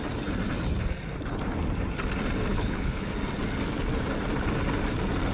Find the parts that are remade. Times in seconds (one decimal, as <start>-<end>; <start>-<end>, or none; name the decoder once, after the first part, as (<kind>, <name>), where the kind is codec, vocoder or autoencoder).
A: 2.5-3.1 (codec, HILCodec)